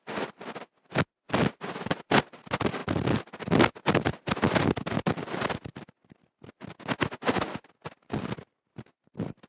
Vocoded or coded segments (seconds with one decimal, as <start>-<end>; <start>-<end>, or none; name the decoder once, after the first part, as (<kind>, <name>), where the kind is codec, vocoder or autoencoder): none